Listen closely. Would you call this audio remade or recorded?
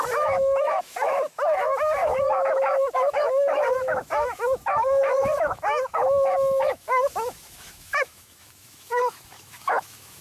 remade